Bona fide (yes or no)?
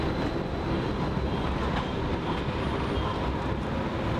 yes